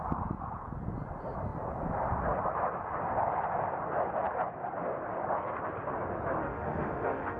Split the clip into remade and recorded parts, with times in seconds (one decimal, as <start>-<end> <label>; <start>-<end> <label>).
0.0-6.4 recorded; 6.4-7.4 remade